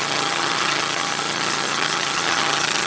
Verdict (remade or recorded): remade